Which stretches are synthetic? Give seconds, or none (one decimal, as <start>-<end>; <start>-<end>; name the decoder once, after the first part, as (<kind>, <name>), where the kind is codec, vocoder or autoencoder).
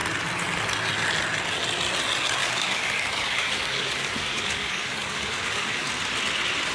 2.4-5.9 (codec, DAC)